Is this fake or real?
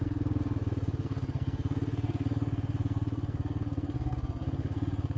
fake